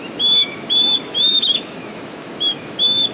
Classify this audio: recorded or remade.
remade